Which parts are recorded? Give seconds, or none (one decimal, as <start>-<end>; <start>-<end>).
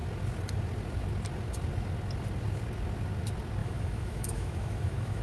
0.0-3.6